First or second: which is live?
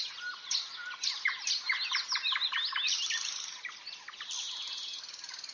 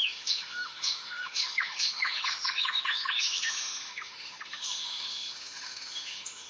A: first